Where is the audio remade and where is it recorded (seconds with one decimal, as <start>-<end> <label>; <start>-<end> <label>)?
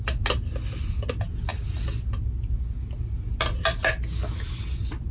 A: 0.0-5.1 recorded